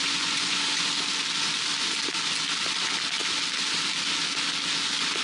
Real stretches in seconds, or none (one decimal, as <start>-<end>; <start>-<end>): 0.9-5.2